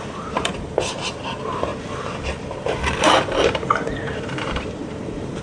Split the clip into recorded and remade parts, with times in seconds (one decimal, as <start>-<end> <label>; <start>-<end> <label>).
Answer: 0.0-1.7 remade; 1.7-3.0 recorded; 3.0-5.4 remade